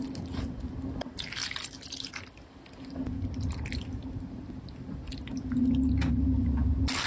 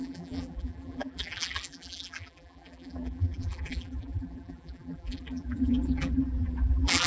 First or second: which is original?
first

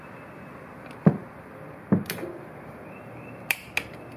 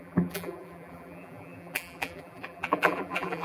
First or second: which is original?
first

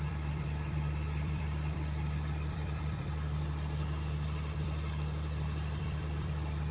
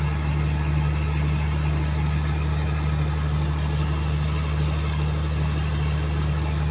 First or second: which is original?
second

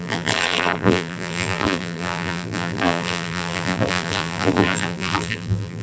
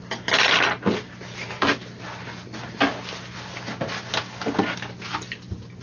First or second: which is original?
second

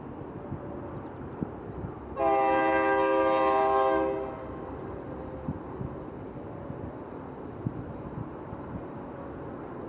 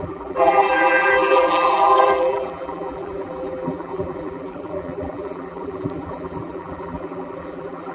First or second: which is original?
first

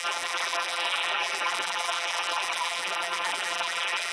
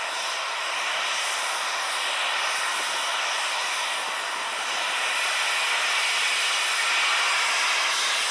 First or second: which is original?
second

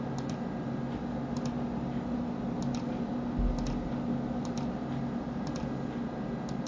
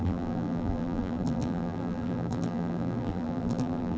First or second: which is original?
first